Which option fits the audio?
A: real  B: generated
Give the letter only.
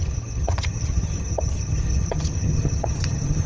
B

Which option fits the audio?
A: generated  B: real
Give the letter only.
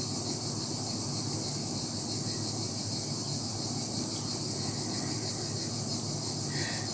B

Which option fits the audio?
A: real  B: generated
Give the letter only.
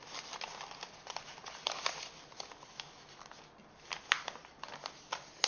A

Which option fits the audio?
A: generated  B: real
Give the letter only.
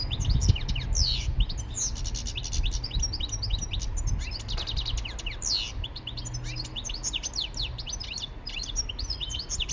B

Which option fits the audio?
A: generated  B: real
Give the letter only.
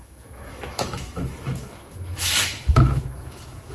A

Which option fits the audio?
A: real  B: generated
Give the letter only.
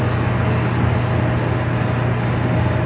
A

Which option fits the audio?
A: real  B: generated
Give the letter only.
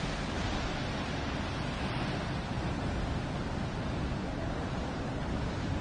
A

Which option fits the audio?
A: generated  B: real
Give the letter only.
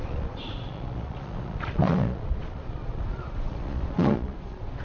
A